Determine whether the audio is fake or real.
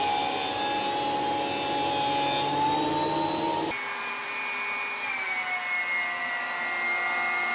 real